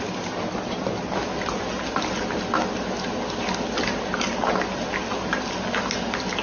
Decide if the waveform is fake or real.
real